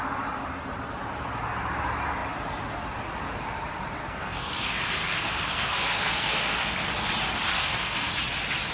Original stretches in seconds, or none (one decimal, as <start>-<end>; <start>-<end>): 0.0-4.0; 6.8-7.5; 8.1-8.7